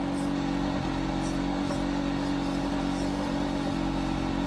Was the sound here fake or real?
real